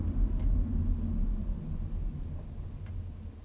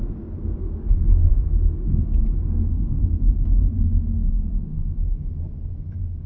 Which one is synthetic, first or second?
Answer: second